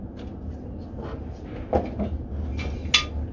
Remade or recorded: recorded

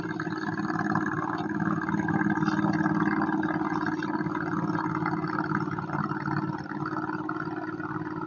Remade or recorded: recorded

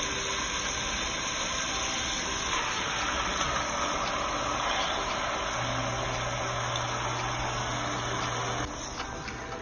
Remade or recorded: recorded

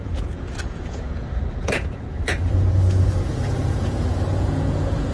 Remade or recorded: remade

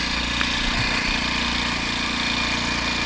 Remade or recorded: recorded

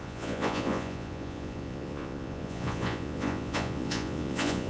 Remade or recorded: remade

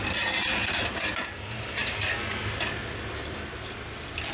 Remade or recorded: recorded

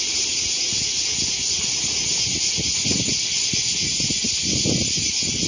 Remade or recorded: recorded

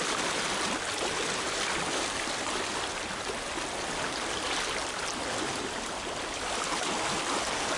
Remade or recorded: recorded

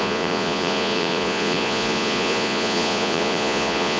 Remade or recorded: remade